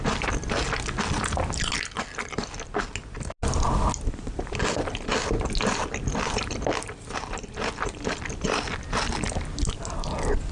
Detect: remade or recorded recorded